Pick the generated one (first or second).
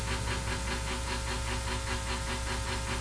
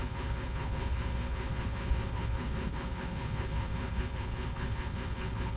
second